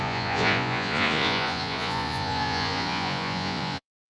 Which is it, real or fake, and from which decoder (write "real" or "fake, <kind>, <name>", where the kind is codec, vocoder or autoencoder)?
fake, vocoder, Vocos